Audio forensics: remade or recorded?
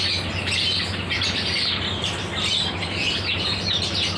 recorded